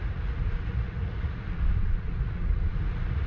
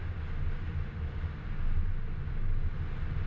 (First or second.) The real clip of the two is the second